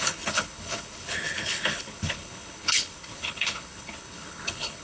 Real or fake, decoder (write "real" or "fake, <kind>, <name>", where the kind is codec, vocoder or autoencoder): fake, codec, HILCodec